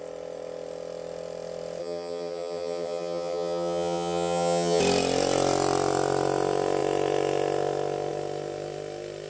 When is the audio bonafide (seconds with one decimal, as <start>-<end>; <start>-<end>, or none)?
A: 0.0-1.8; 4.8-9.3